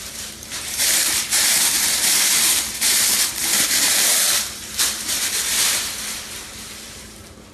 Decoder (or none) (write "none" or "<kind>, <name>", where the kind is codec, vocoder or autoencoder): vocoder, BigVGAN v2